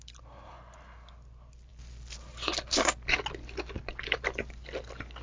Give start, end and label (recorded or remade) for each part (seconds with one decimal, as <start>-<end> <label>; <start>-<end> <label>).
0.0-5.2 recorded